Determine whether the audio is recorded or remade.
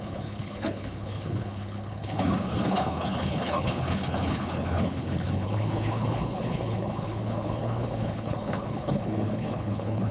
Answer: remade